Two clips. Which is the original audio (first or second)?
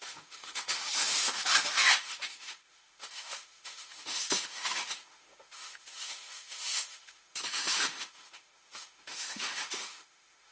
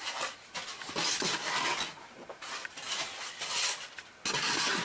second